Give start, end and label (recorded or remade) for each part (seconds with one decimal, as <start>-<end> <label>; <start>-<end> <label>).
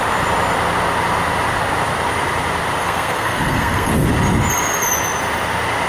0.0-2.8 recorded; 2.8-3.9 remade; 3.9-5.9 recorded